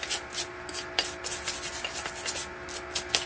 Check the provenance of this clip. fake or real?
real